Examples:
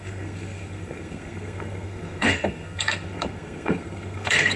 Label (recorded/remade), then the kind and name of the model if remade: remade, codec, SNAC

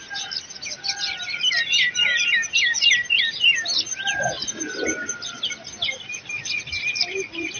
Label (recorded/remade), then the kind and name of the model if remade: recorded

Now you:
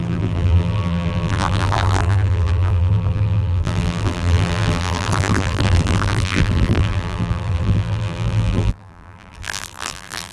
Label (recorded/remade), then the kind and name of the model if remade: remade, vocoder, BigVGAN v2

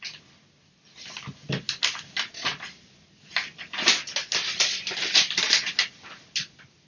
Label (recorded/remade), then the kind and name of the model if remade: recorded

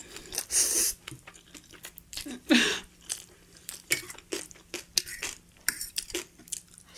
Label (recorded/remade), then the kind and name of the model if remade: remade, vocoder, BigVGAN v2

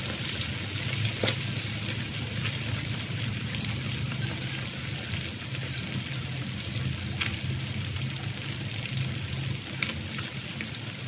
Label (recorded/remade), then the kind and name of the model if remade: recorded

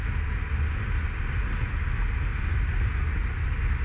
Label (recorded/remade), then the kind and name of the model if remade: recorded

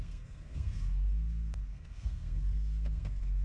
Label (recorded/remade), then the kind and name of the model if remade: remade, codec, SNAC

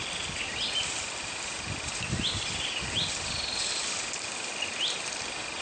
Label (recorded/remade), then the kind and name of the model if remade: recorded